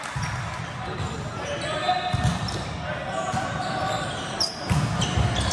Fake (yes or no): no